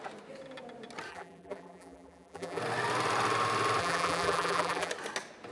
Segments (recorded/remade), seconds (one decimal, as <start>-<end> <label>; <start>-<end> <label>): 0.0-1.1 recorded; 1.1-2.6 remade; 2.6-3.8 recorded; 3.8-4.9 remade; 4.9-5.5 recorded

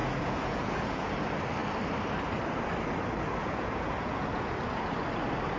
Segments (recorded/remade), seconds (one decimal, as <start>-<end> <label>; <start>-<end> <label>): 0.0-1.1 remade; 1.1-3.4 recorded; 3.4-4.5 remade; 4.5-5.6 recorded

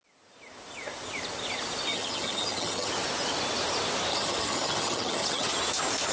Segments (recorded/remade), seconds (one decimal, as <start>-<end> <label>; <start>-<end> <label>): 0.0-1.9 recorded; 1.9-2.9 remade; 2.9-4.1 recorded; 4.1-5.5 remade; 5.5-6.1 recorded